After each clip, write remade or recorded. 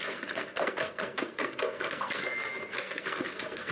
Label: remade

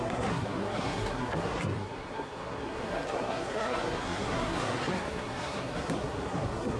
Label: remade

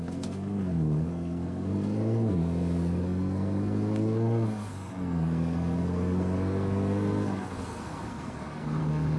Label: remade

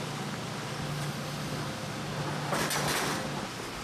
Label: recorded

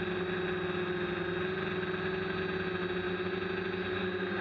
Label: recorded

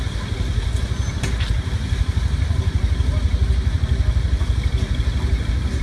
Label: recorded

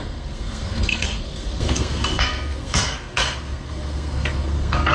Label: remade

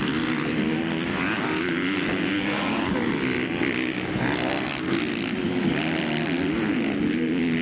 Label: recorded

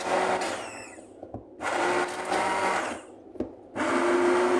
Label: recorded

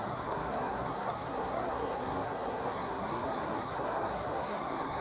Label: remade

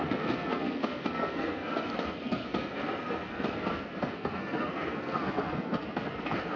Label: remade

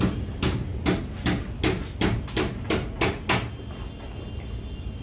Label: recorded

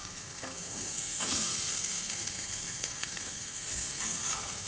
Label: remade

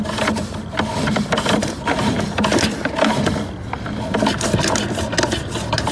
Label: recorded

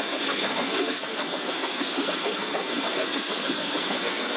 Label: remade